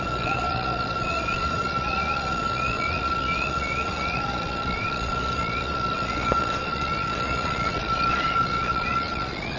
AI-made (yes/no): yes